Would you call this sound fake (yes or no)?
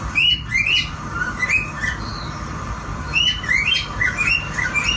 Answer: yes